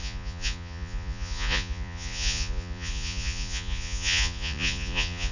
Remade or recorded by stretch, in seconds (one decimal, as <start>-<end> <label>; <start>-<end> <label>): 0.0-5.3 remade